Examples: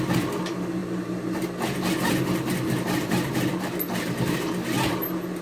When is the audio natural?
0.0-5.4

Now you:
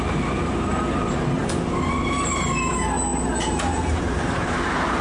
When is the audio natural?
none

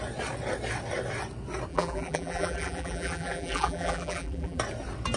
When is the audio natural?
0.0-1.7; 4.6-5.2

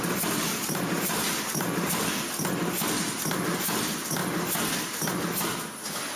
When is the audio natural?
0.0-0.5; 1.9-6.2

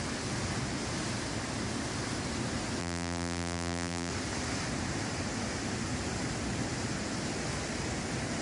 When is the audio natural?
0.0-2.8; 4.1-8.4